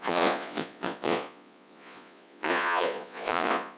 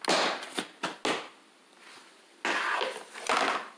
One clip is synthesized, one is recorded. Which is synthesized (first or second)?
first